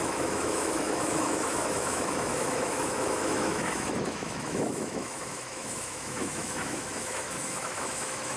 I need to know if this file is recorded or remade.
remade